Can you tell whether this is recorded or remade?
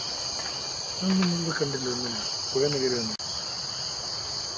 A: recorded